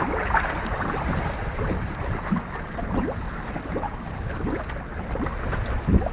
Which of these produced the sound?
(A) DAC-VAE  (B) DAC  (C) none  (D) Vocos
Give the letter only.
C